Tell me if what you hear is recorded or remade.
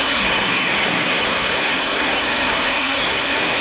remade